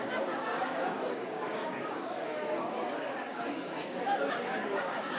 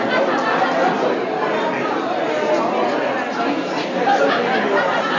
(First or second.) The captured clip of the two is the second